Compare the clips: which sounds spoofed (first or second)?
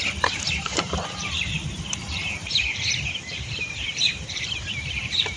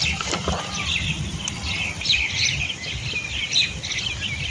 first